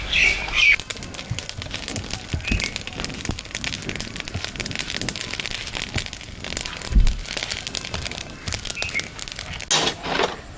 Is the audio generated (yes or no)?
no